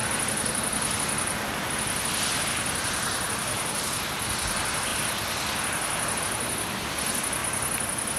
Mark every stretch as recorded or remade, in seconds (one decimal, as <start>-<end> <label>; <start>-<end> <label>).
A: 0.0-8.2 recorded